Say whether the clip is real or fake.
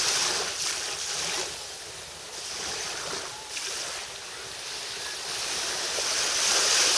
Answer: real